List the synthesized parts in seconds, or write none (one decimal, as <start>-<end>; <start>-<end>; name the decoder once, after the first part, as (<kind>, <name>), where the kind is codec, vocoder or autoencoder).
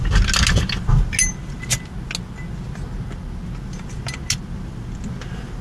none